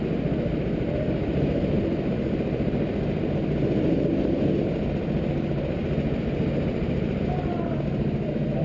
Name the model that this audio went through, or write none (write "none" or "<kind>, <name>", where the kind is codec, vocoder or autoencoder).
none